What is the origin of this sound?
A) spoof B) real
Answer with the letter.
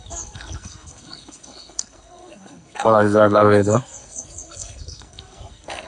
A